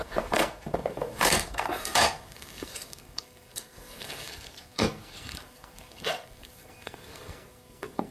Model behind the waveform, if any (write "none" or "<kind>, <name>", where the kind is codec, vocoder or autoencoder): codec, SNAC